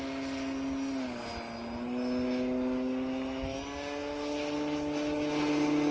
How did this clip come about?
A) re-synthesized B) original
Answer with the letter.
B